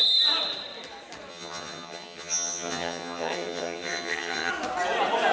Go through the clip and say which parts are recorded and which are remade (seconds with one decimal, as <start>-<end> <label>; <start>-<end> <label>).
0.0-1.3 recorded; 1.3-4.5 remade; 4.5-5.3 recorded